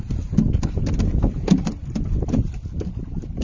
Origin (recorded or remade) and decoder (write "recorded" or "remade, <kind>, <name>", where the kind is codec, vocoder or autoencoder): recorded